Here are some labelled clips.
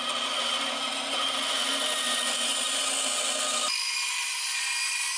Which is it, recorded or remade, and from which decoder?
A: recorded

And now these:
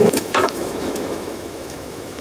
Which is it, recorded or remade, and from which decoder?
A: remade, autoencoder, DAC-VAE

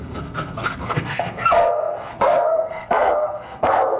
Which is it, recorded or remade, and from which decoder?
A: remade, codec, SNAC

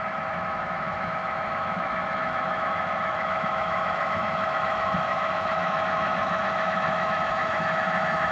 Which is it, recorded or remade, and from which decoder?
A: remade, autoencoder, DAC-VAE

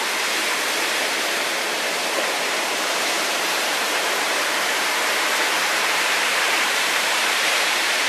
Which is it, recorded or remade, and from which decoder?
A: remade, vocoder, BigVGAN v2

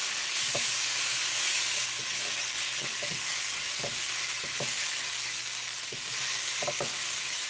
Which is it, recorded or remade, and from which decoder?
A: remade, codec, DAC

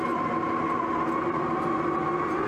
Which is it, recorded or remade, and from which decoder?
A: recorded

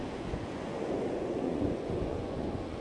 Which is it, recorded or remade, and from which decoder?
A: remade, vocoder, Vocos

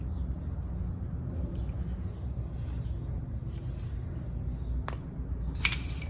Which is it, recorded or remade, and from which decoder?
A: recorded